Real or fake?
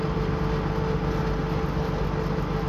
real